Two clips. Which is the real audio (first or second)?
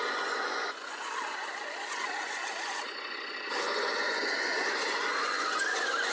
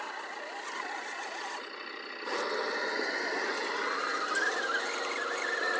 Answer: second